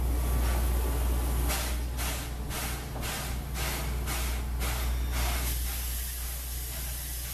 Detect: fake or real real